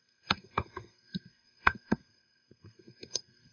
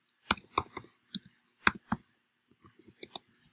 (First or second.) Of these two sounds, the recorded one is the second